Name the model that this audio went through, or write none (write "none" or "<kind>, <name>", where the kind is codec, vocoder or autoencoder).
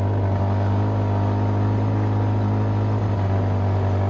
none